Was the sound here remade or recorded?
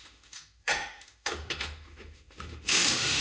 remade